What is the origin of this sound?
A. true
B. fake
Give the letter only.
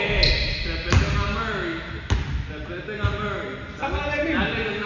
A